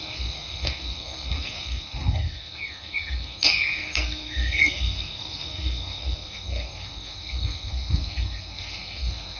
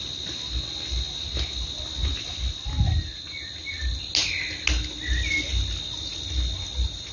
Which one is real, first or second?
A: second